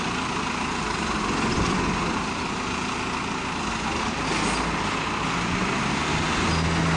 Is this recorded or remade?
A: recorded